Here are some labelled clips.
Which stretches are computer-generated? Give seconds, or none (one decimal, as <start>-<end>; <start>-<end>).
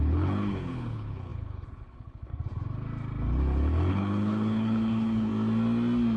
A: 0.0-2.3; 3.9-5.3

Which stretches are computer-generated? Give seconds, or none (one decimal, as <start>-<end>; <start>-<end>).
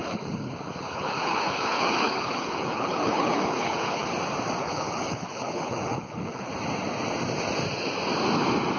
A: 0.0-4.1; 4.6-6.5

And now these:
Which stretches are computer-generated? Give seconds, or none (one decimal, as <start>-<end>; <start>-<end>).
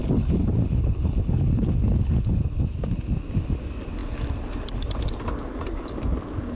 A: 0.0-2.4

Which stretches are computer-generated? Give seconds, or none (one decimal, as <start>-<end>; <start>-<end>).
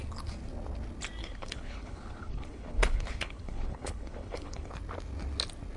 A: 1.2-4.7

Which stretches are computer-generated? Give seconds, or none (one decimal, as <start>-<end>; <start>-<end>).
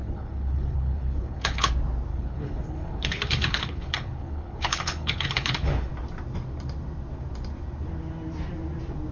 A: 0.0-1.7; 2.1-5.9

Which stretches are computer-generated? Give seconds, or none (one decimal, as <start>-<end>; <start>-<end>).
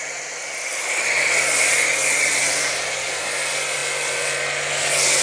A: none